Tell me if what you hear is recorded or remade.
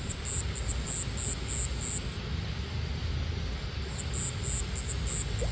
recorded